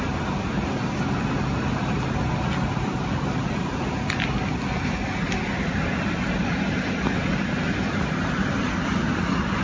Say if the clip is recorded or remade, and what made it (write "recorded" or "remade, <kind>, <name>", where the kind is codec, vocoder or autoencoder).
recorded